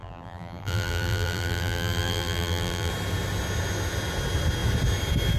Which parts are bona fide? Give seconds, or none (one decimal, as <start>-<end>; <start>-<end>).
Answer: 2.9-5.4